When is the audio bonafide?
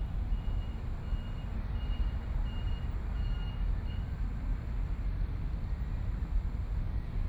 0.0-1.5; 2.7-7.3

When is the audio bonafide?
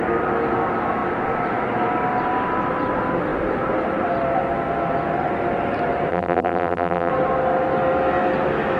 0.0-6.1; 7.1-8.8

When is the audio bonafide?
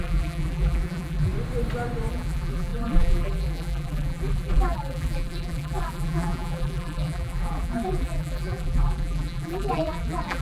1.3-2.1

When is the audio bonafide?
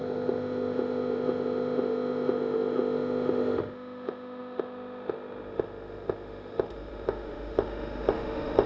none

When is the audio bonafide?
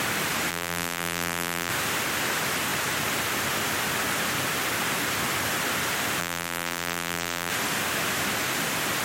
0.0-0.5; 1.7-6.2; 7.5-9.0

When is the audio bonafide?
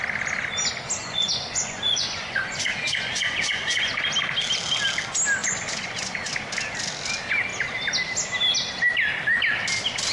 0.0-1.0; 4.0-5.4; 6.3-10.1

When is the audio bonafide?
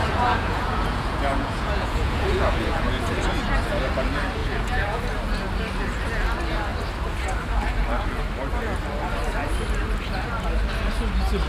3.1-4.4; 5.0-11.5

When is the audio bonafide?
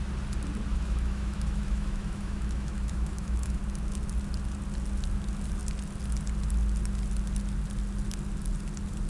0.0-0.7; 3.6-9.1